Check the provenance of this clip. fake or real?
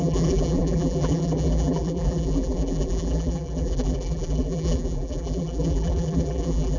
fake